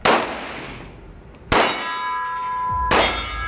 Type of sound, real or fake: real